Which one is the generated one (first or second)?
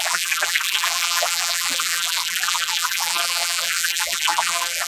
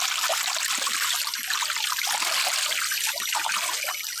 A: first